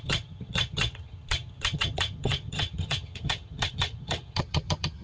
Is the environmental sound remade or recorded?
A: remade